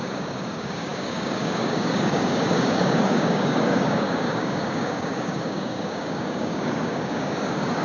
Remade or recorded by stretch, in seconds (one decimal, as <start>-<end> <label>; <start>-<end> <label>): 0.0-7.8 remade

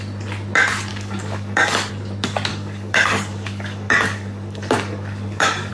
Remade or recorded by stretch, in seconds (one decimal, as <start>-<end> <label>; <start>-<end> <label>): 0.0-0.9 recorded; 0.9-1.9 remade; 1.9-2.5 recorded; 2.5-5.7 remade